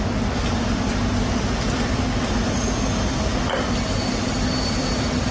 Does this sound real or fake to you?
real